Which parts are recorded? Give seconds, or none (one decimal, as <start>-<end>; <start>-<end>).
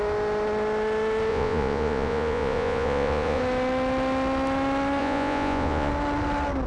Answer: 0.0-1.3; 3.4-5.0; 5.9-6.7